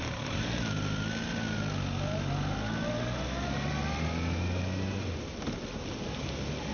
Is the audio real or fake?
real